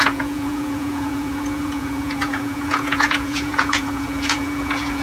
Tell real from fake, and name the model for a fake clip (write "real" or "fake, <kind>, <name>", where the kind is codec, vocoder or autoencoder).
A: fake, vocoder, Vocos